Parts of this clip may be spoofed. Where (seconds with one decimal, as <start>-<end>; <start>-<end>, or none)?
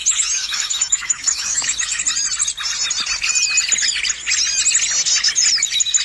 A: 0.0-2.0